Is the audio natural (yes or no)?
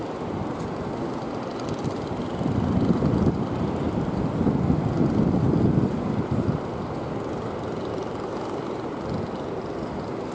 yes